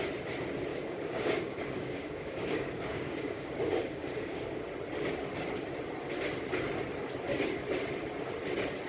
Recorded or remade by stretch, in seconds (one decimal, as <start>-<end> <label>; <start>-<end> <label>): 0.0-0.7 recorded; 0.7-4.6 remade; 4.6-8.9 recorded